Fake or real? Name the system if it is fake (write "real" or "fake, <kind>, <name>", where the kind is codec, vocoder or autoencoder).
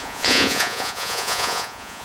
fake, vocoder, Vocos